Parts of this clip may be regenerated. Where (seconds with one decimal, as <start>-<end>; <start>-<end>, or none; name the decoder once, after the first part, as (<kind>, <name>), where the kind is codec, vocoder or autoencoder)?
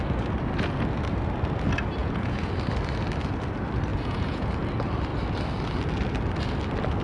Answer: 2.0-2.5 (vocoder, Vocos); 3.9-4.5